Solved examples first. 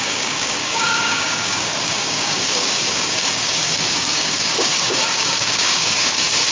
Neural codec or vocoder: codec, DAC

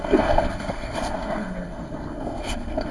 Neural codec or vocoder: codec, SNAC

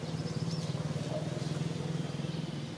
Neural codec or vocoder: none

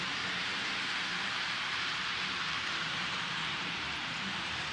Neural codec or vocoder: vocoder, BigVGAN v2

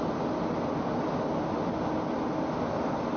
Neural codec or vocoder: none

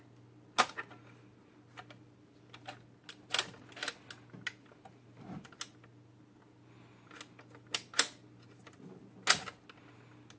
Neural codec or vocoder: none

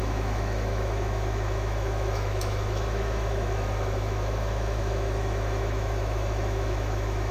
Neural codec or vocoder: autoencoder, DAC-VAE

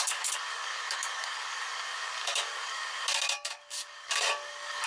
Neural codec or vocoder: codec, DAC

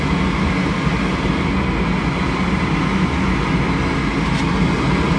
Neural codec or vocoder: none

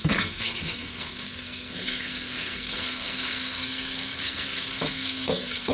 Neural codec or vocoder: codec, SNAC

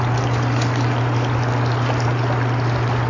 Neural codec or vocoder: none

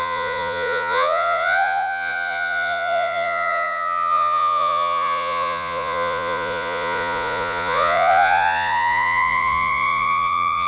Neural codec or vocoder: vocoder, Vocos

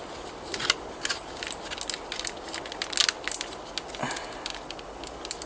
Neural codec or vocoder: none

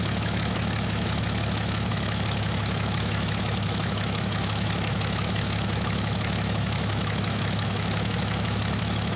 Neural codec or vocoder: autoencoder, DAC-VAE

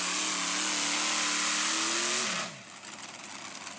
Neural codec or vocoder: none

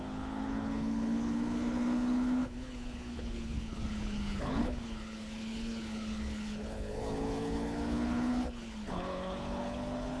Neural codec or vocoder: codec, HILCodec